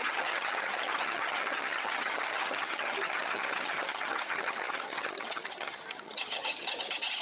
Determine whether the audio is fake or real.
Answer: fake